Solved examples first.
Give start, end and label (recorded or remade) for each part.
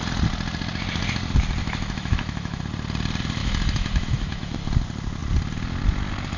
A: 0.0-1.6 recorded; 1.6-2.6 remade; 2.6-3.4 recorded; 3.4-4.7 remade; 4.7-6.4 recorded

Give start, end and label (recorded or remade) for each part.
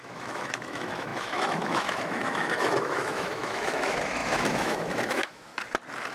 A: 0.0-5.5 remade; 5.5-6.1 recorded